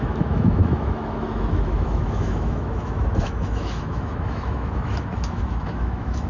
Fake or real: fake